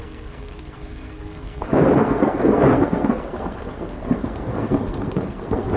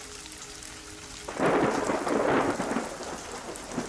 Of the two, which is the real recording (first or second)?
second